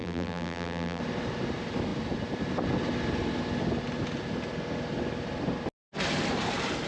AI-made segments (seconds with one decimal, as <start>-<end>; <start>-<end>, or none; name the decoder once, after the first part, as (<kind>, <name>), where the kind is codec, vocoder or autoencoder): 0.0-1.0 (vocoder, BigVGAN v2)